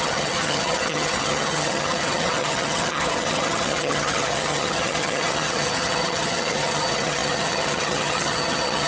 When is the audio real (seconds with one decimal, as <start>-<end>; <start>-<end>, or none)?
none